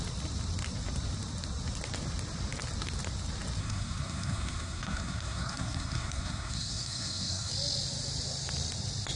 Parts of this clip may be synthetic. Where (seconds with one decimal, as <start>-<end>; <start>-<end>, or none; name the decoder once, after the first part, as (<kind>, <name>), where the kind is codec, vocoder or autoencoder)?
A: 3.6-7.5 (codec, SNAC)